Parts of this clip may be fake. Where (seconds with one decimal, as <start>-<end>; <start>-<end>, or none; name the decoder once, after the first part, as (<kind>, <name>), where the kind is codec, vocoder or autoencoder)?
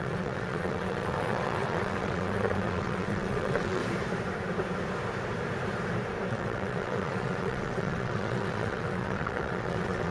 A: 0.0-3.8 (vocoder, WaveNeXt); 6.3-10.1